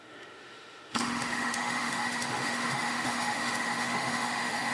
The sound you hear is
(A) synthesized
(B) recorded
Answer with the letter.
A